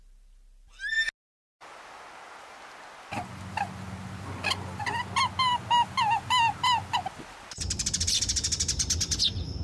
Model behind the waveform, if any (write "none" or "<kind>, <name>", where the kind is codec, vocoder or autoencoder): none